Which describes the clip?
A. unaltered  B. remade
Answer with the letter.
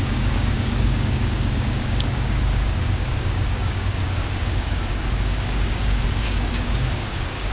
B